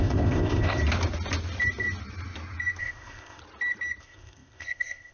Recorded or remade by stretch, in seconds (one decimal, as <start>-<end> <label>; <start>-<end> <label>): 0.0-0.8 remade; 0.8-2.8 recorded; 2.8-3.4 remade; 3.4-4.0 recorded; 4.0-5.1 remade